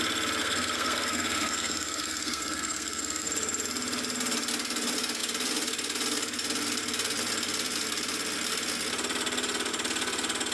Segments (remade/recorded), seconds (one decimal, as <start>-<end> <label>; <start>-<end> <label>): 0.0-0.4 recorded; 0.4-3.3 remade; 3.3-10.5 recorded

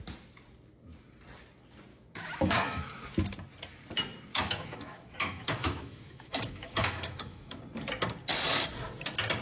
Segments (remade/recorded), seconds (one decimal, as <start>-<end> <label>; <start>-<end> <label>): 0.0-1.9 recorded; 1.9-3.0 remade; 3.0-4.3 recorded; 4.3-7.6 remade; 7.6-9.4 recorded

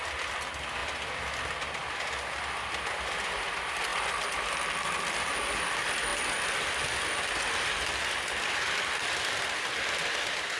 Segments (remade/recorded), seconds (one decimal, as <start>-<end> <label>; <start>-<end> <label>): 0.0-10.6 recorded

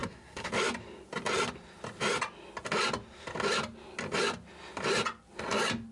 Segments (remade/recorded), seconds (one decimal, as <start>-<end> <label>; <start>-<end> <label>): 0.0-0.5 remade; 0.5-5.9 recorded